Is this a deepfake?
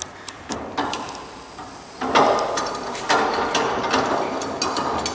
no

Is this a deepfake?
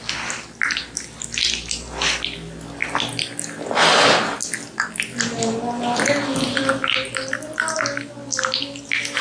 no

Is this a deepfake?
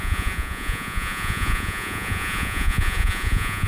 yes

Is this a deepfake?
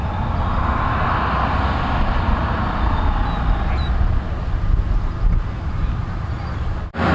no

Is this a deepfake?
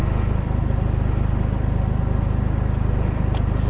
no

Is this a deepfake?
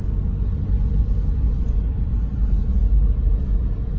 no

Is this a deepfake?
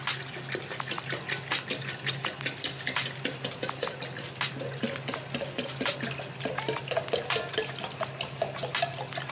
no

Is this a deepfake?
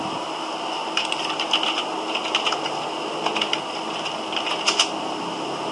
no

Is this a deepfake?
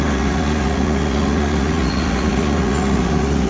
yes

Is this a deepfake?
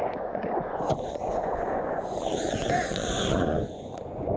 yes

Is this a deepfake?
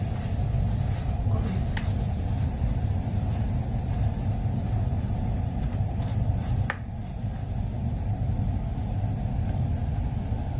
no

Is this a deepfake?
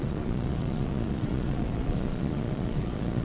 yes